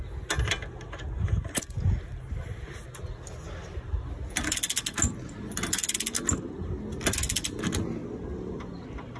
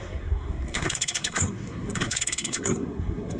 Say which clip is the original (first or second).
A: first